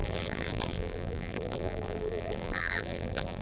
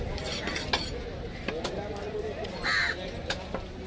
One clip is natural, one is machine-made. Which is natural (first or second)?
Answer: second